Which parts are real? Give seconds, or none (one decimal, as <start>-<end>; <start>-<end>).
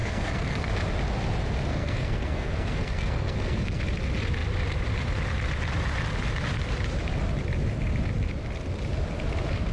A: 0.7-1.7; 3.8-9.7